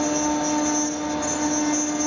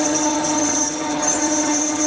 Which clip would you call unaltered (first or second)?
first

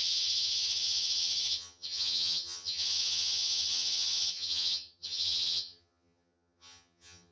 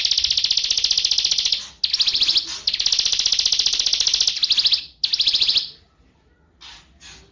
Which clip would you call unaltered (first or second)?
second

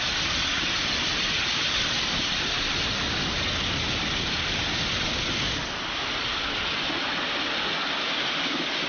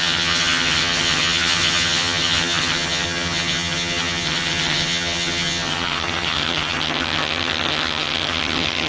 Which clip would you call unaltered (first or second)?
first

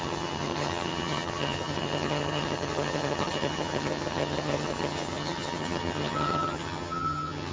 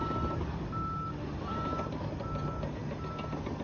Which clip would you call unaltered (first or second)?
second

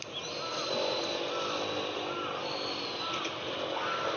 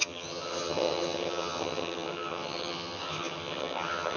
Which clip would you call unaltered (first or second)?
first